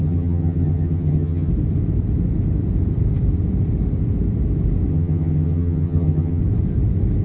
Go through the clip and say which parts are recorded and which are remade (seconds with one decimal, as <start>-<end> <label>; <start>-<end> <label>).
0.0-1.5 remade; 1.5-4.9 recorded; 4.9-6.4 remade; 6.4-7.2 recorded